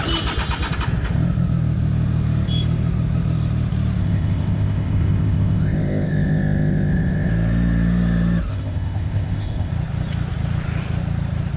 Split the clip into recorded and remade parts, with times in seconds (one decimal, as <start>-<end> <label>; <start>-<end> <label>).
0.0-4.0 recorded; 4.0-7.3 remade; 7.3-8.5 recorded; 8.5-9.7 remade; 9.7-11.6 recorded